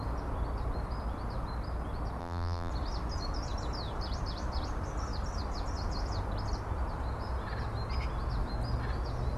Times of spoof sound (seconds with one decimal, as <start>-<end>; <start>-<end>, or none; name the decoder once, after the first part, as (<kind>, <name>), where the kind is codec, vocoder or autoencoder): 2.2-2.7 (vocoder, BigVGAN v2)

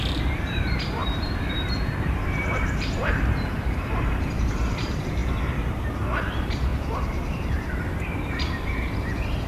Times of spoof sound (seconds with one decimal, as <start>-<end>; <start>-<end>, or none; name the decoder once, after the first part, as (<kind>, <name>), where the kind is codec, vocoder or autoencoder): 0.0-9.5 (vocoder, BigVGAN v2)

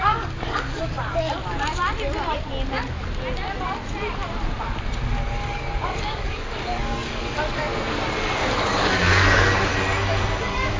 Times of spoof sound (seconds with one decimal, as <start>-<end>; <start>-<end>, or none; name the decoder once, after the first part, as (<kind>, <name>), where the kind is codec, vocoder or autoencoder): 0.0-1.4 (codec, DAC); 5.1-7.6; 8.4-9.7; 10.4-10.8

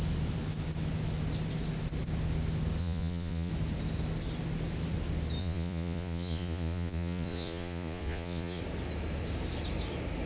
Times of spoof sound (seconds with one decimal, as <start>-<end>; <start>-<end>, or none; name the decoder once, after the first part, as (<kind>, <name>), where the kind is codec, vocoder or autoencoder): 2.8-3.5 (vocoder, Vocos); 5.4-8.6

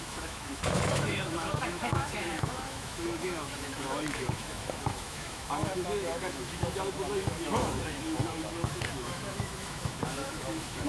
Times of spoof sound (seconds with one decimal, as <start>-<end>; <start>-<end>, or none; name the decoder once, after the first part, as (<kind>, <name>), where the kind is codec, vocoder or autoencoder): 0.0-10.9 (autoencoder, DAC-VAE)

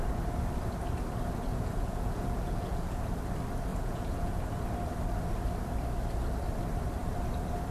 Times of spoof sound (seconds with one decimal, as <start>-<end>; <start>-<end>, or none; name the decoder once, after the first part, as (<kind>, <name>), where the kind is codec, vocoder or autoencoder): 1.5-3.1 (vocoder, Vocos); 3.7-4.4